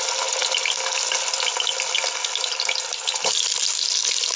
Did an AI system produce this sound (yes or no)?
no